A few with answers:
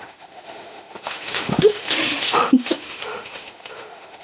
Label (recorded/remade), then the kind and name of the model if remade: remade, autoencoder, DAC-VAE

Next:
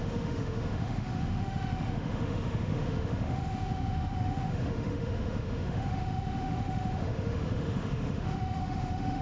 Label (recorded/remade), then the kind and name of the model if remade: remade, autoencoder, DAC-VAE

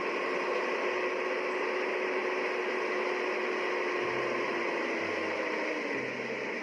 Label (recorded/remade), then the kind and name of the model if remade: recorded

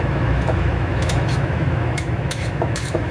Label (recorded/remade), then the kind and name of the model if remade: remade, autoencoder, DAC-VAE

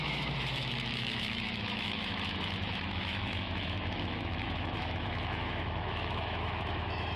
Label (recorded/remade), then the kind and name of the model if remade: remade, autoencoder, DAC-VAE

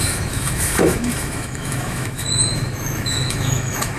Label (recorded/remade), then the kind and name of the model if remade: remade, autoencoder, DAC-VAE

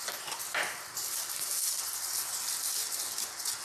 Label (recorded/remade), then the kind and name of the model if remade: recorded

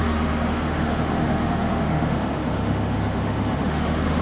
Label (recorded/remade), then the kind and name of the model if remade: remade, autoencoder, DAC-VAE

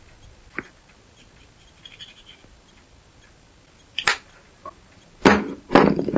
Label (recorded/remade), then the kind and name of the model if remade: recorded